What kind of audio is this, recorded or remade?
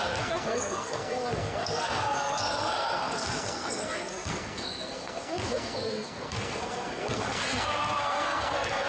remade